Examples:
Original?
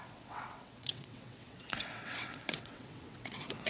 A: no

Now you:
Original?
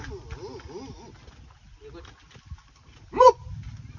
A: yes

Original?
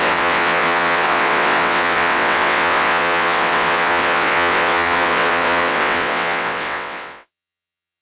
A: no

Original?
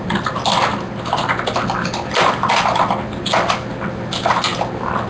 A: yes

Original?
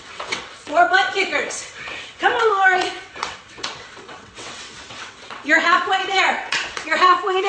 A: no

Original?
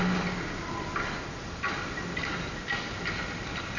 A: yes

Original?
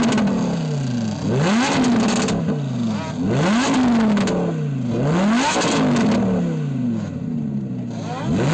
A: yes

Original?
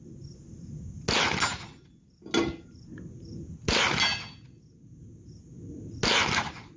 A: yes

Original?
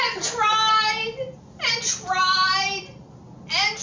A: yes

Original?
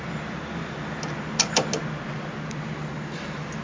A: yes